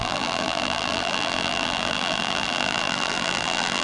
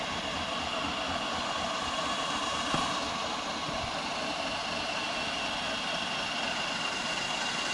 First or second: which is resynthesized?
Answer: first